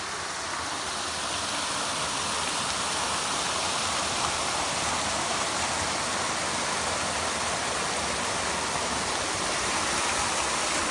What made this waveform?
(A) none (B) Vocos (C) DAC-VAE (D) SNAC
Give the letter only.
A